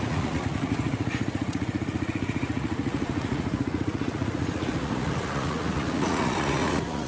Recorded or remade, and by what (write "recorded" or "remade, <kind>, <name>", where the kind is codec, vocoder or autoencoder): remade, vocoder, Vocos